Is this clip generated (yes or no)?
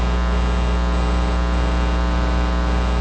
no